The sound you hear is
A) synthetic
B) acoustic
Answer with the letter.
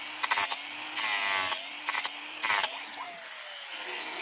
B